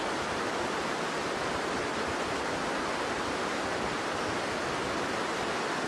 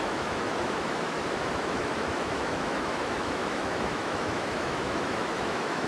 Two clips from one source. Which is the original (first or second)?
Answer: first